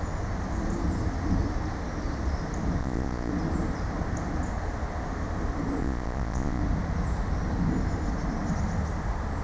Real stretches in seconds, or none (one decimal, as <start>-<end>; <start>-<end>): 0.0-2.8; 3.3-5.8; 6.6-9.4